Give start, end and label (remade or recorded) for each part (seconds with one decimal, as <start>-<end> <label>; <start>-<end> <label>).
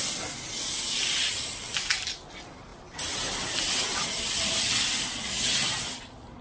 0.0-6.4 recorded